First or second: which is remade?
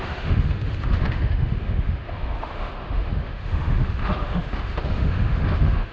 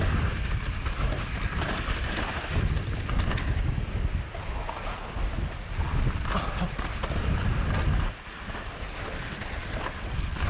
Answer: first